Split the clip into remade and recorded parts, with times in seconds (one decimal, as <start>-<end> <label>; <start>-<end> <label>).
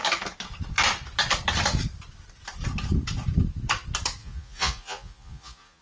0.0-4.2 recorded; 4.2-5.8 remade